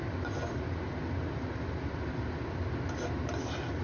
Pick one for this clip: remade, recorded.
recorded